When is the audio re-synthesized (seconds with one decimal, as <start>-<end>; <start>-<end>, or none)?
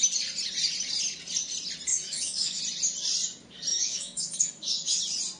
1.9-2.6; 3.7-5.0